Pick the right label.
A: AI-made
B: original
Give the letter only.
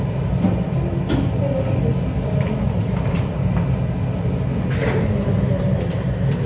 B